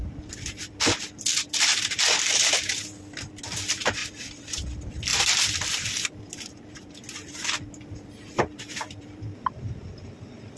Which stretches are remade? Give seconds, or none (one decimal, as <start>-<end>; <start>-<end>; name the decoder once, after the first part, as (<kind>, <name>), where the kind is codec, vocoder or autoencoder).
none